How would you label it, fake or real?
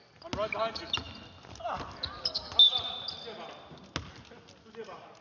real